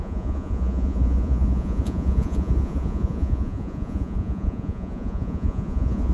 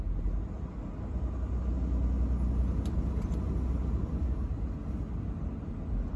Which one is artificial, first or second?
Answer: first